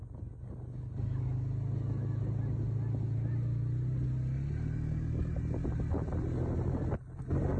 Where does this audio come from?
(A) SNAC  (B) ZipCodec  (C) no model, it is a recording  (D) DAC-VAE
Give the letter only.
C